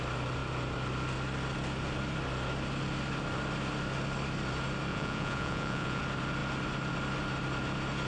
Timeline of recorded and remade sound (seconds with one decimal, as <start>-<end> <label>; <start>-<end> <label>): 0.0-4.9 recorded; 4.9-6.0 remade; 6.0-8.1 recorded